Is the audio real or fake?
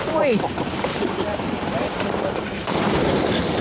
fake